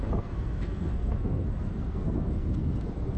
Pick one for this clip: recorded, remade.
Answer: remade